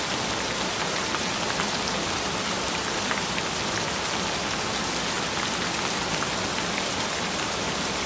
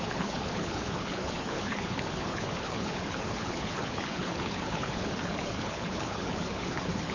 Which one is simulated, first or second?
second